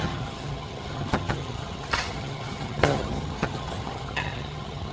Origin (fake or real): fake